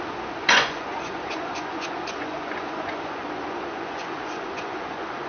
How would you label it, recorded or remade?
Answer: remade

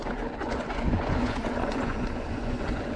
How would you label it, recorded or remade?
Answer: remade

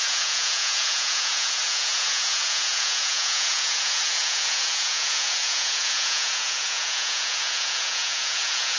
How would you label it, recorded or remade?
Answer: remade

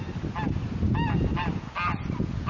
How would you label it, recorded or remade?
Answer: recorded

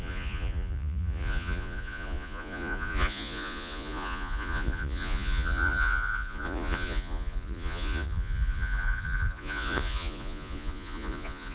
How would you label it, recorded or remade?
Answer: remade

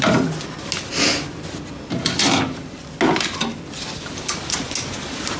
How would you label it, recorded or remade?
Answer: recorded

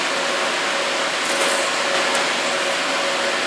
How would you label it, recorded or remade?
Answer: recorded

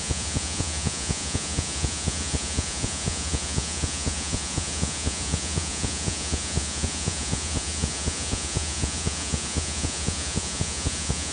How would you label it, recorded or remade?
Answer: remade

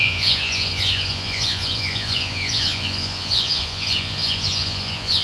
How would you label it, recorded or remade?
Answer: remade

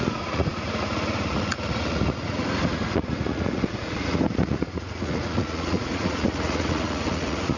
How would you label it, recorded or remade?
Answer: remade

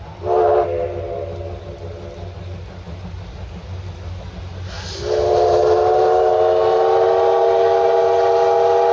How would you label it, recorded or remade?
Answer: recorded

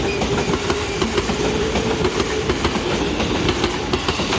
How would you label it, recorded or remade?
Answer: recorded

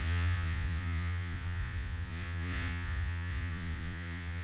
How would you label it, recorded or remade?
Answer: remade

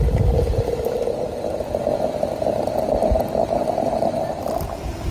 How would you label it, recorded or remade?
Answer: recorded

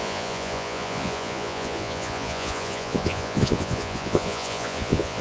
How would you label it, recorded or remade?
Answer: remade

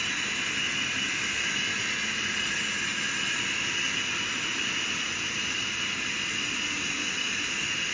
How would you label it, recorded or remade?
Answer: recorded